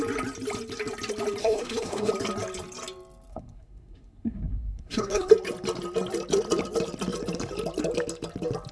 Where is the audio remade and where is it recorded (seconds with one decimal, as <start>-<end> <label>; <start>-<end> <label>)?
0.0-1.4 recorded; 1.4-2.1 remade; 2.1-3.3 recorded; 3.3-5.3 remade; 5.3-8.7 recorded